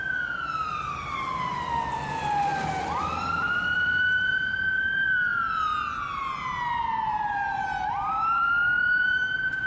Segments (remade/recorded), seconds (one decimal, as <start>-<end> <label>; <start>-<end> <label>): 0.0-5.7 remade; 5.7-7.1 recorded; 7.1-7.5 remade; 7.5-8.1 recorded; 8.1-9.7 remade